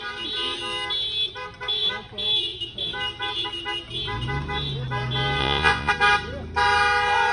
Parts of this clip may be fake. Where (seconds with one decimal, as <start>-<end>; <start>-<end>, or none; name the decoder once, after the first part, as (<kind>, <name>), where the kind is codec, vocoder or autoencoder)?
5.4-5.9 (vocoder, Vocos)